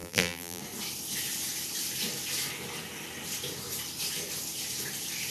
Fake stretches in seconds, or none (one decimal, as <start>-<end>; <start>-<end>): 0.0-0.6

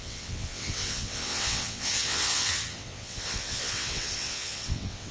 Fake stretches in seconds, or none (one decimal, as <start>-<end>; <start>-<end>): 0.0-5.1

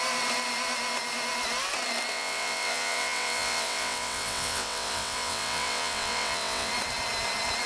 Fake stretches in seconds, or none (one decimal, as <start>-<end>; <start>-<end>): 2.1-6.7

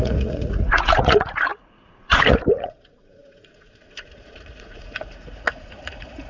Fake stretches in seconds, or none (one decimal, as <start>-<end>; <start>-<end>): 0.0-6.3